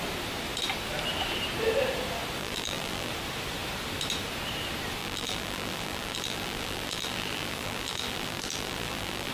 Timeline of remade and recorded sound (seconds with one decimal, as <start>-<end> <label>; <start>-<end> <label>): 0.0-2.4 recorded; 2.4-3.1 remade; 3.1-5.0 recorded; 5.0-9.3 remade